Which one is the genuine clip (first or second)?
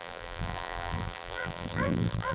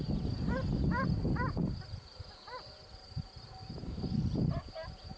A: second